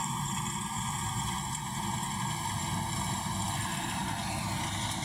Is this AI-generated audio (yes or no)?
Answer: no